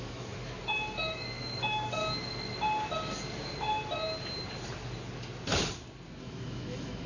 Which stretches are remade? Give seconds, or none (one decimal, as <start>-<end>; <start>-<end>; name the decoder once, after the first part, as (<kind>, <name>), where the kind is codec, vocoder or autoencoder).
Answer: 0.0-0.6 (autoencoder, DAC-VAE); 1.1-2.0; 6.2-7.1